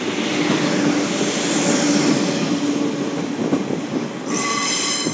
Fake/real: real